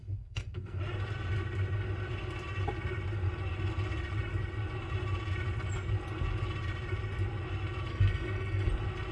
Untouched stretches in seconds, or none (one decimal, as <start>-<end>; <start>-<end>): 0.8-7.9; 8.7-9.1